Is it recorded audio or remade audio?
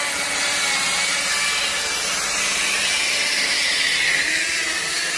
recorded